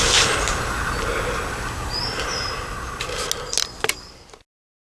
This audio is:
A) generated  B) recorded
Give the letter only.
B